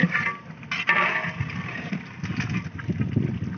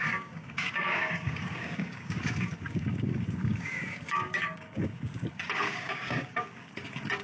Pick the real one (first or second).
first